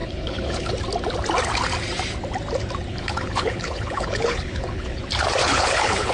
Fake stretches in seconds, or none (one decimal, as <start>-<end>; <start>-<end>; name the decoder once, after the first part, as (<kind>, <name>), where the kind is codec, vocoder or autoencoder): 0.0-0.7 (codec, HILCodec); 2.9-5.0; 5.4-6.1